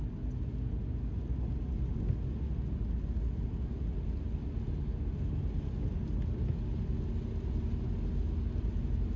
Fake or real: real